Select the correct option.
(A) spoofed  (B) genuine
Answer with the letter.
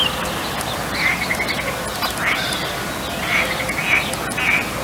B